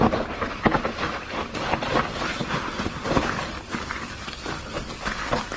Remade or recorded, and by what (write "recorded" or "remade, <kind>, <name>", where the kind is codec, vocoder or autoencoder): recorded